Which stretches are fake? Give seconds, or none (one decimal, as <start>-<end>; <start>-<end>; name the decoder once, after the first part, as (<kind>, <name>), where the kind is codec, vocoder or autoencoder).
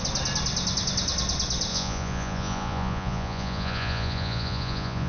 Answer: 1.7-5.1 (vocoder, Vocos)